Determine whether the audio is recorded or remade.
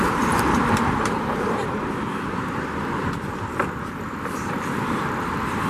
remade